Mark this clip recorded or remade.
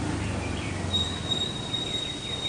remade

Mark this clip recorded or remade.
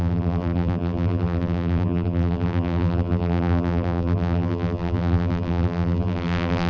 remade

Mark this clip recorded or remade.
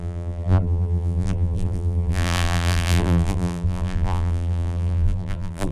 remade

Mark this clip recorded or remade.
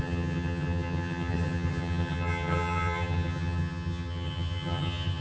remade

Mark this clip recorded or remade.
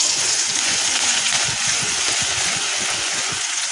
remade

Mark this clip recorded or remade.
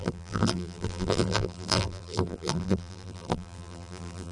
remade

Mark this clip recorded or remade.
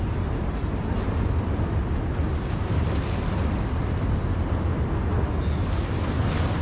recorded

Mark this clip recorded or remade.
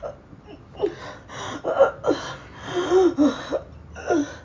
recorded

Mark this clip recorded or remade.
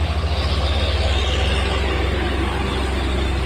recorded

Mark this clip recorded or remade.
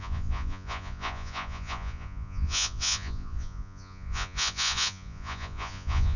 remade